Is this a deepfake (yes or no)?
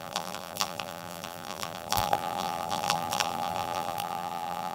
yes